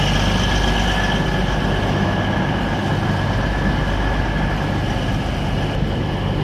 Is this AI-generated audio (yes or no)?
no